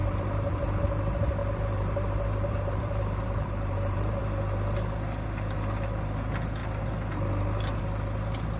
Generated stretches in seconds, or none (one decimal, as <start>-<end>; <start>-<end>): 0.0-0.8; 1.4-4.2